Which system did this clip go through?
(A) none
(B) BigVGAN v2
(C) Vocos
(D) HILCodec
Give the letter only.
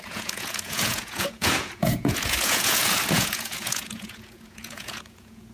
C